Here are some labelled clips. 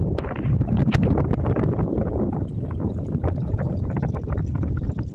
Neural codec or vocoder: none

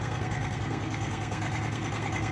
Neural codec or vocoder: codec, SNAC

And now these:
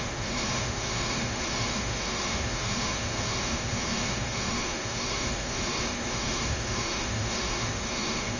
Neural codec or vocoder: autoencoder, DAC-VAE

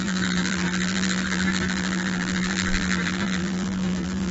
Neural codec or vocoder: vocoder, BigVGAN v2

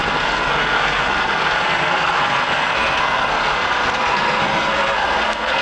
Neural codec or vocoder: codec, SNAC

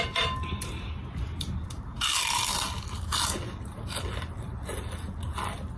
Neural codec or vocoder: none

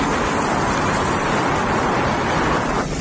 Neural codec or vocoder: none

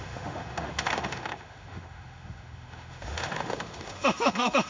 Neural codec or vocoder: autoencoder, DAC-VAE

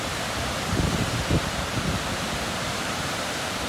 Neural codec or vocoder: vocoder, BigVGAN v2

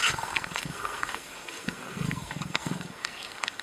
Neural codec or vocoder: codec, SNAC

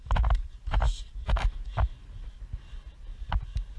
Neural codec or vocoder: none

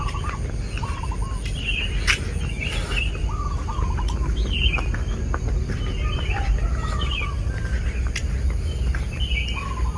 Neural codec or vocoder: none